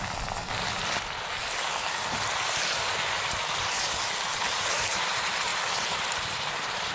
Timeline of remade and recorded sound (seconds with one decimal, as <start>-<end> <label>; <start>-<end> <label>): 0.0-5.5 recorded; 5.5-6.9 remade